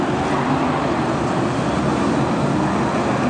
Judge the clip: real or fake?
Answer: real